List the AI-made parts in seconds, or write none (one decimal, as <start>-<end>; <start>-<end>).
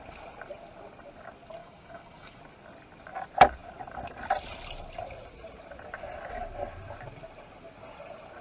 1.6-2.4